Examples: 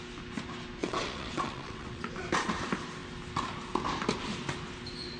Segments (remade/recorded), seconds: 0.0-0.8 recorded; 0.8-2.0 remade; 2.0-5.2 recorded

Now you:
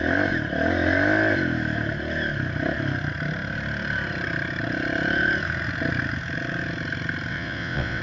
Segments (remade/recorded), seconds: 0.0-7.3 recorded; 7.3-8.0 remade

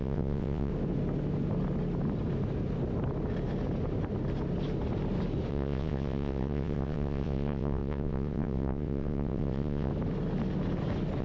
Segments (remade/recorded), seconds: 0.0-0.7 remade; 0.7-5.5 recorded; 5.5-9.9 remade; 9.9-11.2 recorded